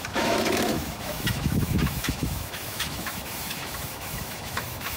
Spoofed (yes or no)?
yes